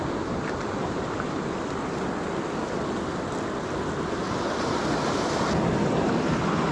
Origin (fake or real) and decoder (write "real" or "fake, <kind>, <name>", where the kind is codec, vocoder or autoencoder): real